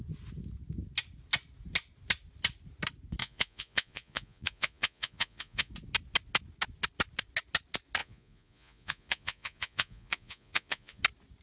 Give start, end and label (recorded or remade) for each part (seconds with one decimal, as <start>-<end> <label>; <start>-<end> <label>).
0.0-3.2 recorded; 3.2-5.7 remade; 5.7-8.0 recorded; 8.0-11.0 remade; 11.0-11.4 recorded